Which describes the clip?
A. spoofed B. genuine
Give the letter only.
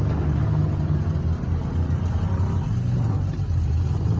B